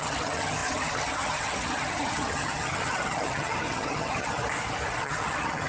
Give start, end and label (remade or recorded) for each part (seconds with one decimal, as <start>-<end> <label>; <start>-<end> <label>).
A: 0.0-4.4 remade; 4.4-5.0 recorded; 5.0-5.7 remade